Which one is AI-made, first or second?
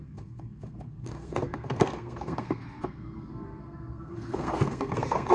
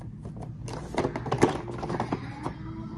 first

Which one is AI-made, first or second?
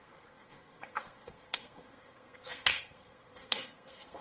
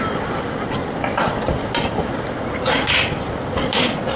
first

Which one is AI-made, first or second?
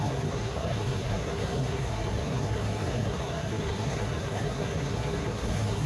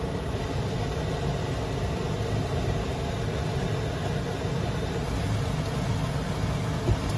first